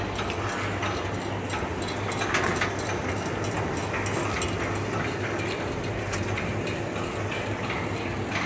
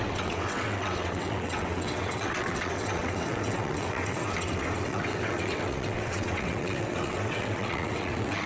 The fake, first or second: second